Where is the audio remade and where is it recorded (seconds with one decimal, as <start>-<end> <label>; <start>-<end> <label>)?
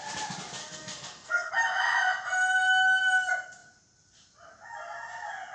0.0-0.6 recorded; 0.6-1.5 remade; 1.5-5.5 recorded